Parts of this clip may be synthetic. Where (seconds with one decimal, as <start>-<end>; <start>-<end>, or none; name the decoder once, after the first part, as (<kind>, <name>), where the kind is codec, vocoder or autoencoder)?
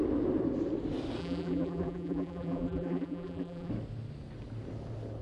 1.2-3.7 (vocoder, BigVGAN v2)